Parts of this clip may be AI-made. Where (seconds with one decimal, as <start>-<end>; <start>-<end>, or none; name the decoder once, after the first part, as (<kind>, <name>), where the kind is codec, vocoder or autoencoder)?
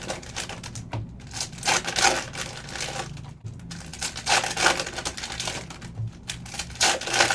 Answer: none